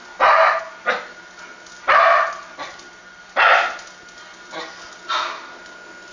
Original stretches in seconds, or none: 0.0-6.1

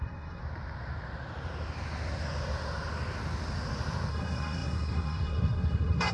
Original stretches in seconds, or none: 0.4-4.1

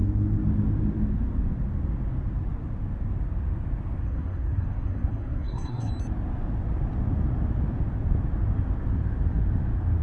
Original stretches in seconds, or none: 0.0-4.0; 5.9-10.0